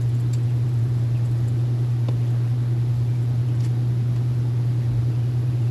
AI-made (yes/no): no